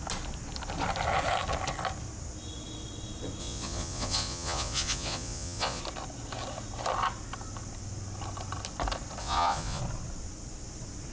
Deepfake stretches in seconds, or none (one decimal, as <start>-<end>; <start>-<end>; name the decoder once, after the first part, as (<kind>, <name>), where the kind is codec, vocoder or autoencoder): 3.4-5.8 (vocoder, Vocos); 9.2-9.8